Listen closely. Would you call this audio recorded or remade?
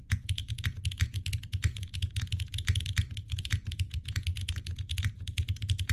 remade